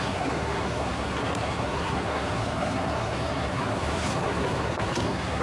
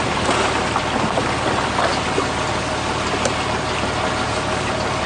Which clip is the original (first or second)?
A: second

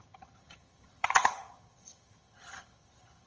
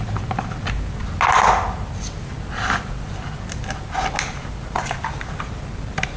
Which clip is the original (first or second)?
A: second